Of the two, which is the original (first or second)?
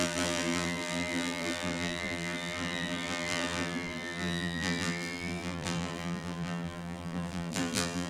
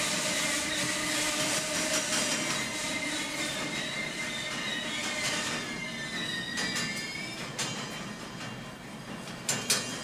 second